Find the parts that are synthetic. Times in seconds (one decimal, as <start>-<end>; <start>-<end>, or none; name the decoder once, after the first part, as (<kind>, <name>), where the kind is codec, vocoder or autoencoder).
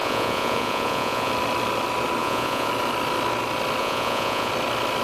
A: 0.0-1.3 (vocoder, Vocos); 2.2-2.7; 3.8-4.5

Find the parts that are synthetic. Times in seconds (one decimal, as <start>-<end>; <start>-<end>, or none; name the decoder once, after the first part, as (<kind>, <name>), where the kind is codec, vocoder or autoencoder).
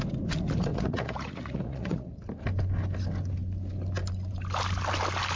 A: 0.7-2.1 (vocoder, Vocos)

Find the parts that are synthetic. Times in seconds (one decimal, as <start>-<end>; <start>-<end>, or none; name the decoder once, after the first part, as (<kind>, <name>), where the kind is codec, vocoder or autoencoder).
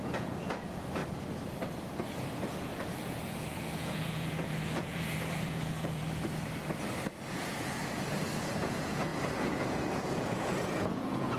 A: 0.0-1.0 (vocoder, Vocos); 2.1-6.0; 7.3-7.8; 8.5-11.4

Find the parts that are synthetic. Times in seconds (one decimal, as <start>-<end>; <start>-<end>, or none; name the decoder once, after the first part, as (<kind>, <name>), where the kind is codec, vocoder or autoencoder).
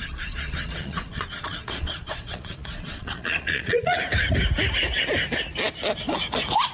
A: 0.0-4.0 (vocoder, Vocos)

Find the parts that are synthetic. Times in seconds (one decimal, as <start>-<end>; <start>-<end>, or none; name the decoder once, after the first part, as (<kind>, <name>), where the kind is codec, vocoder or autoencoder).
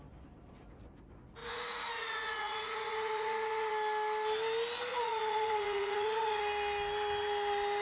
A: 1.4-3.7 (vocoder, Vocos); 4.9-6.4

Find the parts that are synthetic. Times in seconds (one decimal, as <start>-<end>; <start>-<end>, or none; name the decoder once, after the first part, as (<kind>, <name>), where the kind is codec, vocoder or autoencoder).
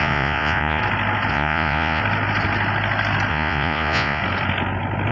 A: 0.0-0.8 (vocoder, Vocos); 1.3-2.0; 3.3-4.2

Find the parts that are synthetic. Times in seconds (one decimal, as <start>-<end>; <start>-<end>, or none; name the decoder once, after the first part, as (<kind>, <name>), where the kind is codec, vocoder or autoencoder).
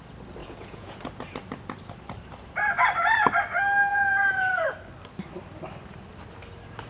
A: 0.4-1.0 (vocoder, Vocos); 3.9-4.5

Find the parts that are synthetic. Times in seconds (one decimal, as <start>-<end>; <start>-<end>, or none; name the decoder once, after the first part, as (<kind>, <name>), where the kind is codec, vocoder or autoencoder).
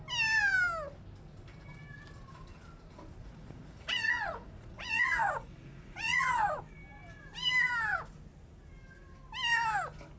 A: 3.2-6.6 (vocoder, Vocos)